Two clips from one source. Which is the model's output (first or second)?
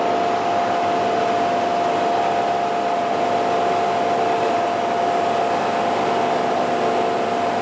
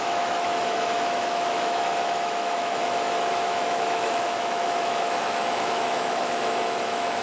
second